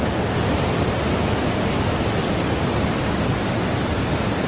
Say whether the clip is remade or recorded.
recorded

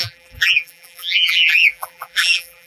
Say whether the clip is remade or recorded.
remade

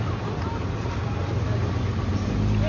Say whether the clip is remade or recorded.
recorded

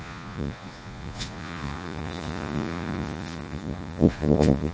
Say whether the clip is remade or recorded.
remade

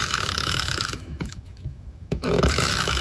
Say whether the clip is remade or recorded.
remade